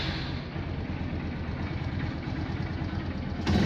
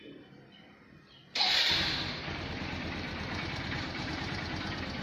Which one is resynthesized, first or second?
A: second